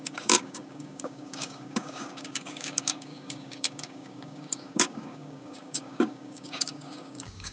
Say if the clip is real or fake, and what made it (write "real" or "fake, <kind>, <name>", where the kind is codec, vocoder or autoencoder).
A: fake, codec, DAC